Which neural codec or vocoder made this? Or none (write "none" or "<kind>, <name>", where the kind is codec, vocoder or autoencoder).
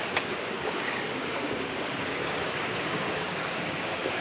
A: codec, DAC